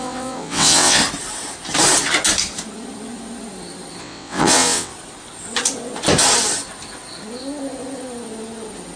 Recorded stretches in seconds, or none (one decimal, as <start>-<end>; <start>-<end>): 1.0-4.0; 4.9-9.0